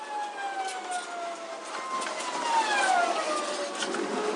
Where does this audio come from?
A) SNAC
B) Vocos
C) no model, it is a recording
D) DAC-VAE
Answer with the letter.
C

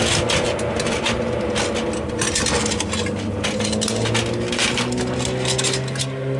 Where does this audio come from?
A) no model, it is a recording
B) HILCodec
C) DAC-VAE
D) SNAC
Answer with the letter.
A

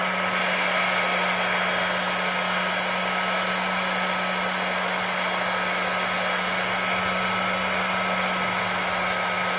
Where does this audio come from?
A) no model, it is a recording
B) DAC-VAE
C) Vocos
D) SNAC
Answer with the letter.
A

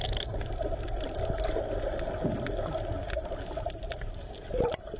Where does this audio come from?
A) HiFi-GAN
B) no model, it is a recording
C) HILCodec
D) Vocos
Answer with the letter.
B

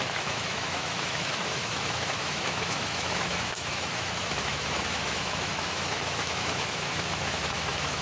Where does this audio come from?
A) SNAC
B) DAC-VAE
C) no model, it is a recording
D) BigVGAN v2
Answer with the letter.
B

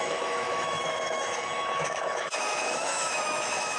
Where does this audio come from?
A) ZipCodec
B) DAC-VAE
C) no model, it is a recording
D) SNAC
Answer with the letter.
B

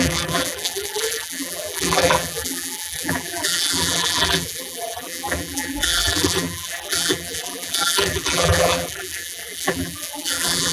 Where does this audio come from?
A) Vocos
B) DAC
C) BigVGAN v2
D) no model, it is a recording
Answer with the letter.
C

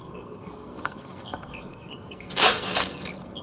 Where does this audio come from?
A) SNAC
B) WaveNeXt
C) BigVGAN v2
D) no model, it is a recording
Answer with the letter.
A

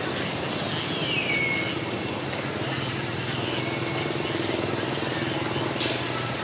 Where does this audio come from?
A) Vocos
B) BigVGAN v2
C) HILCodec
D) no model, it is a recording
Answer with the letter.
D